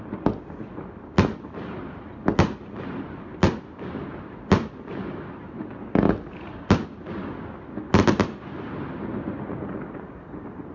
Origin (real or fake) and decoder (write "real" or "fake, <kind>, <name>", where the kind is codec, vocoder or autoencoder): real